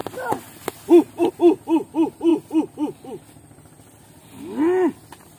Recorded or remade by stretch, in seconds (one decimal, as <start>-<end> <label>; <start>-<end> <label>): 0.0-5.4 recorded